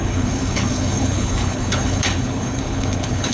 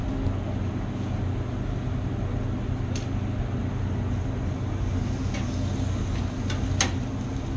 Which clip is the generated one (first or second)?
first